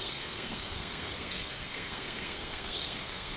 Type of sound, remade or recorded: remade